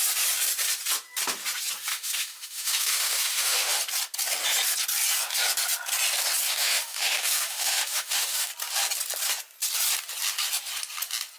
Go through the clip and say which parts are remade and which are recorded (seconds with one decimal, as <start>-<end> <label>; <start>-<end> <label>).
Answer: 0.0-1.9 recorded; 1.9-3.8 remade; 3.8-6.5 recorded; 6.5-8.5 remade; 8.5-11.4 recorded